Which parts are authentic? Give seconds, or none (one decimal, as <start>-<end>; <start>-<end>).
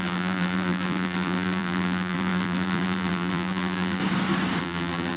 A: 4.0-4.6